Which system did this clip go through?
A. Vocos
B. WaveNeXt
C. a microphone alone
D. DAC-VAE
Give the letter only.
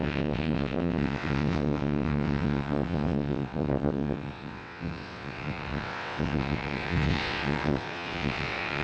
B